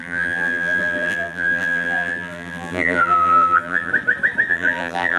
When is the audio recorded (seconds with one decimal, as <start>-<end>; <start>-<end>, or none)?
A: 3.9-4.5